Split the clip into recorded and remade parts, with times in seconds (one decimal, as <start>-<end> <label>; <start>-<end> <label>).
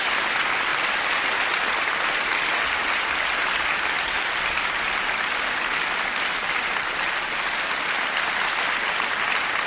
0.0-9.7 recorded